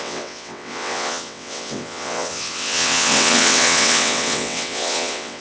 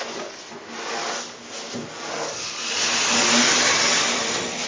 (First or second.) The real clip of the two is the second